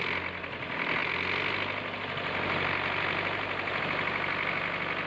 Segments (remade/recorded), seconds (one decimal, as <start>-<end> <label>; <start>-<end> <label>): 0.0-5.1 recorded